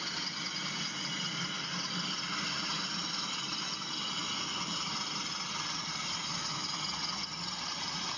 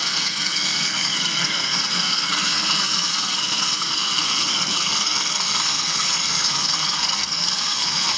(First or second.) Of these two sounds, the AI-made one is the second